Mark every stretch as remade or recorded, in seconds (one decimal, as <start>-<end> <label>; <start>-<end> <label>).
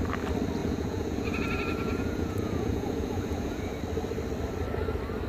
0.0-0.6 recorded; 0.6-3.8 remade; 3.8-5.3 recorded